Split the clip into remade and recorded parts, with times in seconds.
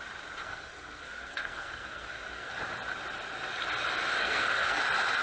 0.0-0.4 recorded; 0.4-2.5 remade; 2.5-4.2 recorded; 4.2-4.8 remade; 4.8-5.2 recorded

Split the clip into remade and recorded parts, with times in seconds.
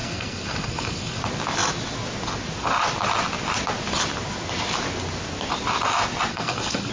0.0-1.2 remade; 1.2-6.3 recorded; 6.3-6.9 remade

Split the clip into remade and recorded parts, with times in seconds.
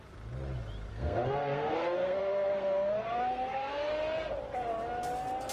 0.0-0.9 recorded; 0.9-3.9 remade; 3.9-5.5 recorded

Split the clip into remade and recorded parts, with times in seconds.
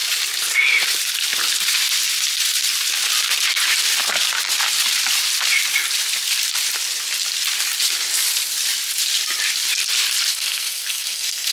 0.0-10.3 recorded; 10.3-11.5 remade